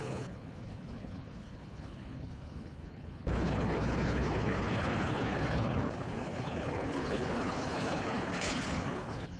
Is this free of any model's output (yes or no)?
no